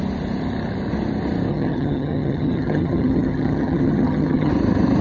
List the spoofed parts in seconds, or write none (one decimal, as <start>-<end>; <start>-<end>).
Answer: 1.5-4.5